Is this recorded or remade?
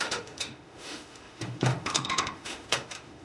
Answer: remade